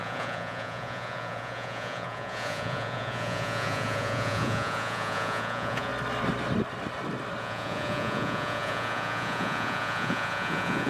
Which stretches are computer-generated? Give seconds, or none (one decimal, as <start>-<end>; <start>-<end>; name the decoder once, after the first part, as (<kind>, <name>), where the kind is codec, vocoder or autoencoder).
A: 0.0-5.9 (vocoder, Vocos); 7.4-10.9